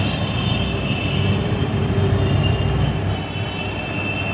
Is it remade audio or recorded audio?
recorded